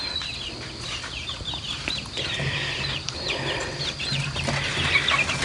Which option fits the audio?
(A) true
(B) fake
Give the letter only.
A